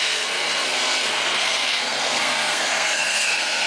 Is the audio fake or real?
fake